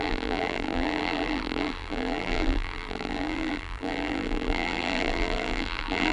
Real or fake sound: fake